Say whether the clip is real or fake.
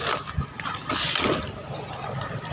real